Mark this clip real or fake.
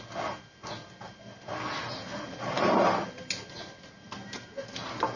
real